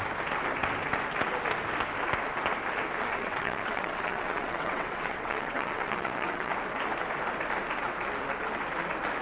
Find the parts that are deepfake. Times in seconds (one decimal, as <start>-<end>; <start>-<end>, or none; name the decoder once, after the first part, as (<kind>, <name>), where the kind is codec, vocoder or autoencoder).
3.1-6.5 (vocoder, WaveNeXt)